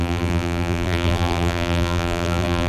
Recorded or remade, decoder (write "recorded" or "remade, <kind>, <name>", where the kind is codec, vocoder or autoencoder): remade, vocoder, BigVGAN v2